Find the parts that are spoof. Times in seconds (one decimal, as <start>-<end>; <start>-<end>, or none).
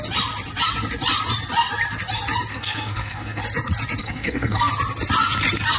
2.5-3.4; 4.0-4.7